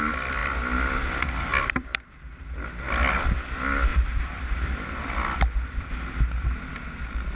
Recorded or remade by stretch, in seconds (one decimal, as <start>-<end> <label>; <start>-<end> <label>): 0.0-1.5 recorded; 1.5-2.4 remade; 2.4-3.9 recorded; 3.9-5.9 remade; 5.9-7.4 recorded